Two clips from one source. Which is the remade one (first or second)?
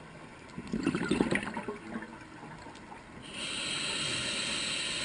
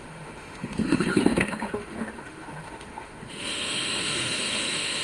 second